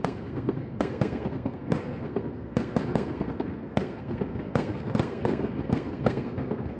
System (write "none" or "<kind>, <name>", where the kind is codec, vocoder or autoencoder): codec, SNAC